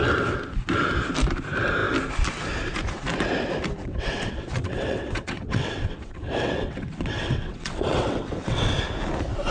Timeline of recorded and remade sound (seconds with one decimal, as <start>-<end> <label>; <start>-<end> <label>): 0.0-3.8 recorded; 3.8-8.8 remade; 8.8-9.5 recorded